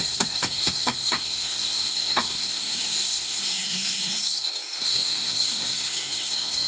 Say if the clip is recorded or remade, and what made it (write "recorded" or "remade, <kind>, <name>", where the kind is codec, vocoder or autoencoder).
remade, codec, SNAC